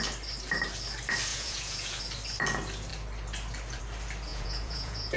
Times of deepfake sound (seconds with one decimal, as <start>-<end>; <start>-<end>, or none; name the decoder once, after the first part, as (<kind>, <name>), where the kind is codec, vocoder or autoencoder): 1.3-2.0 (vocoder, Vocos); 4.3-5.2